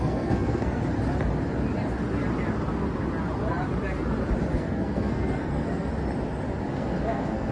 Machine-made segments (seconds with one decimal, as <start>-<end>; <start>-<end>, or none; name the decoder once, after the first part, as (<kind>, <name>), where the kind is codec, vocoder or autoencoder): 0.0-0.8 (codec, SNAC); 4.5-5.9; 6.7-7.5